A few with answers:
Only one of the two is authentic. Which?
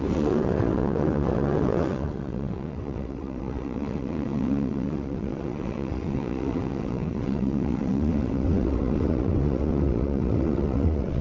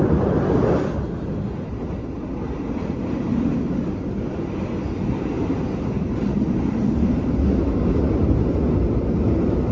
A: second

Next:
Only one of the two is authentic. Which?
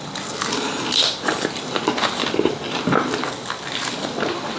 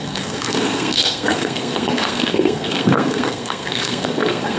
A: first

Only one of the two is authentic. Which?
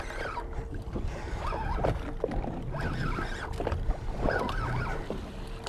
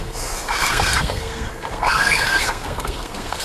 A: first